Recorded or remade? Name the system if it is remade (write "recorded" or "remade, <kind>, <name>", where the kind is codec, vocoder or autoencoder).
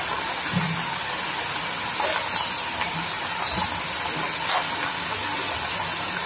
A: recorded